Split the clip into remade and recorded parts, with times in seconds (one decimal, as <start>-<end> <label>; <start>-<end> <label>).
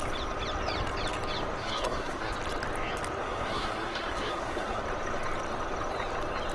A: 0.0-1.6 recorded; 1.6-2.3 remade; 2.3-3.2 recorded; 3.2-4.8 remade; 4.8-6.5 recorded